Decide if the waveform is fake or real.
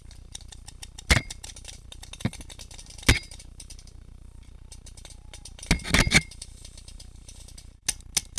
real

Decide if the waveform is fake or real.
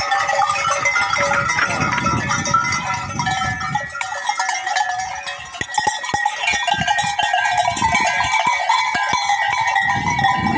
real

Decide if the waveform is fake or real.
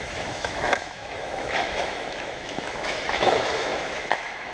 fake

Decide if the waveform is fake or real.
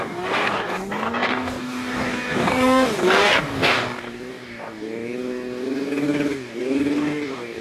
fake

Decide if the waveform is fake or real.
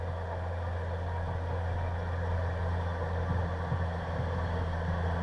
real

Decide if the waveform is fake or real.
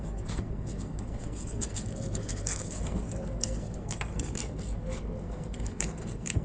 fake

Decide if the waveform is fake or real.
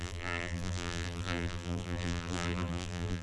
fake